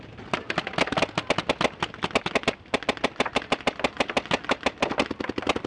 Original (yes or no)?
yes